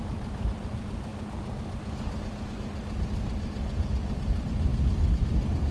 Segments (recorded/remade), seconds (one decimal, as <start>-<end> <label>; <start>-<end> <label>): 0.0-5.7 recorded